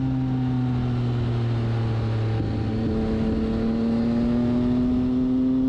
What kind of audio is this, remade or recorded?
recorded